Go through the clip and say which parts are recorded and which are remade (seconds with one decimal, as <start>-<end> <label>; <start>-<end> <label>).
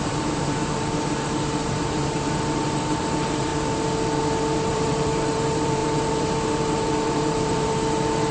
0.0-3.5 remade; 3.5-4.7 recorded; 4.7-8.3 remade